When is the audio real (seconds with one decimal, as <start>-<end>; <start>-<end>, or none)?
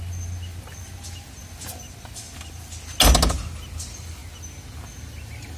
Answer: 0.0-5.6